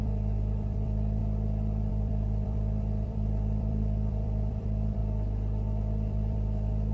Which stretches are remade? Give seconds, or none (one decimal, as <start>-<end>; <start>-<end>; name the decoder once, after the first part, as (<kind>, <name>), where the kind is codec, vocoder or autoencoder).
0.0-1.2 (vocoder, BigVGAN v2); 1.9-5.0; 6.1-6.9